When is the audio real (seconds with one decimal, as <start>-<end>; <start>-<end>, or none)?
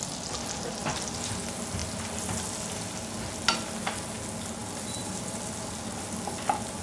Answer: 0.0-4.6; 5.9-6.8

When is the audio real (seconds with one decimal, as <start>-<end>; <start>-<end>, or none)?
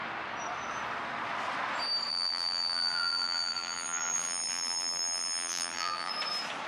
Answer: 0.0-2.1; 6.1-6.7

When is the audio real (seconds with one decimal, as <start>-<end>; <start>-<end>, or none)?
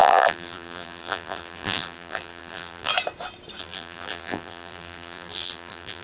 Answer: 2.9-3.6